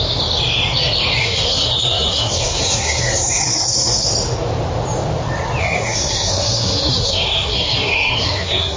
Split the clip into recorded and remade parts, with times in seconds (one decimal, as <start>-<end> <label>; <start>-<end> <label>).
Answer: 0.0-1.2 recorded; 1.2-4.1 remade; 4.1-5.6 recorded; 5.6-8.8 remade